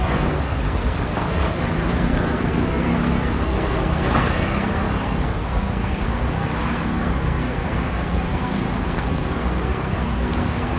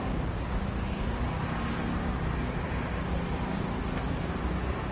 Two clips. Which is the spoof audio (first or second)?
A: first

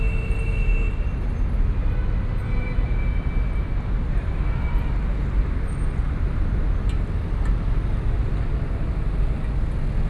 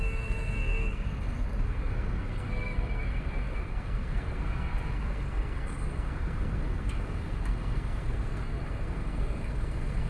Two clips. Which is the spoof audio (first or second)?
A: second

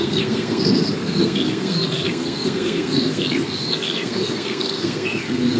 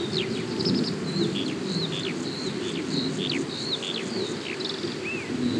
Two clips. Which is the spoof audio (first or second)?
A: first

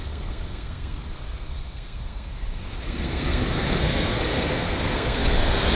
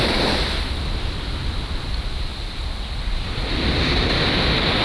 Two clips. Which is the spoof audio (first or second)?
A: first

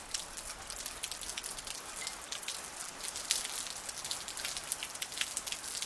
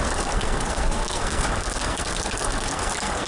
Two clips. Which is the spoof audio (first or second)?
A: second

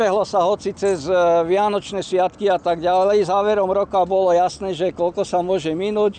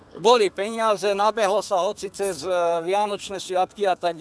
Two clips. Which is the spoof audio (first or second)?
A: second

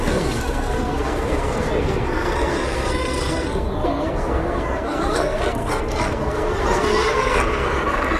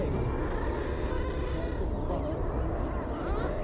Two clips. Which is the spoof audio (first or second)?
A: first